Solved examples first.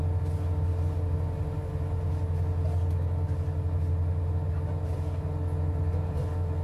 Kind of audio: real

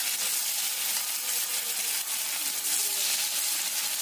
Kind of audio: real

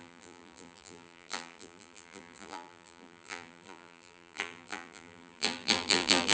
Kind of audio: fake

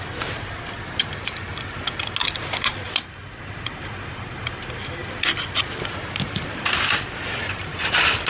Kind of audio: real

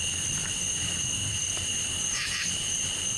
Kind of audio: fake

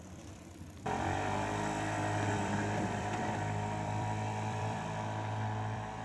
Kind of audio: fake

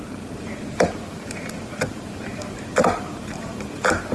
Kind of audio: fake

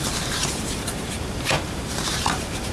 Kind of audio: fake